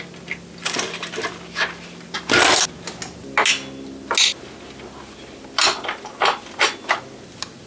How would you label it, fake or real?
real